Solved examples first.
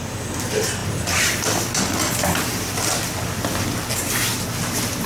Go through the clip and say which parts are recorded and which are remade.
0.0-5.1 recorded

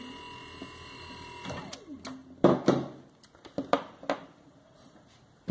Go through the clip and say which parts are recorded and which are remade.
0.0-5.5 recorded

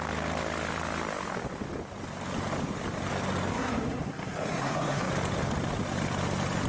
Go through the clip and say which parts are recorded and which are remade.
0.0-3.5 recorded; 3.5-5.1 remade; 5.1-6.7 recorded

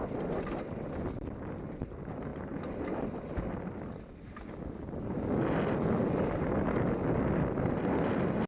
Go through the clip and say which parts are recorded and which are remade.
0.0-8.5 recorded

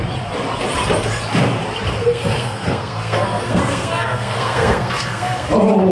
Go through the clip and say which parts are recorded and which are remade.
0.0-2.0 recorded; 2.0-5.5 remade; 5.5-5.9 recorded

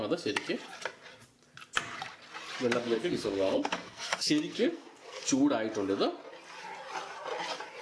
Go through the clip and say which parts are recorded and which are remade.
0.0-2.8 recorded; 2.8-5.2 remade; 5.2-7.8 recorded

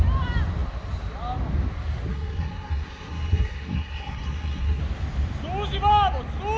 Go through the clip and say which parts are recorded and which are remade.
0.0-2.1 recorded; 2.1-4.8 remade; 4.8-6.6 recorded